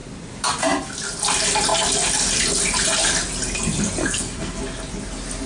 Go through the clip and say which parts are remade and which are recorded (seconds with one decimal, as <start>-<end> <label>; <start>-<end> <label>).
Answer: 0.0-4.0 recorded; 4.0-4.6 remade; 4.6-5.5 recorded